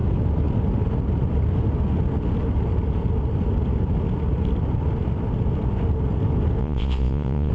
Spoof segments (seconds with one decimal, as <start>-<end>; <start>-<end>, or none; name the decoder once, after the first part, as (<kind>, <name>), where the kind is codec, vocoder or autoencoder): 6.6-7.5 (vocoder, Vocos)